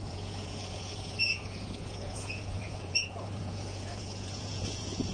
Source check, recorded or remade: remade